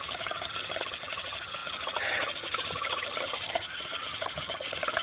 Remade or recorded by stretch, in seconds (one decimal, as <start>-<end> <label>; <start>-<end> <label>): 0.0-5.0 remade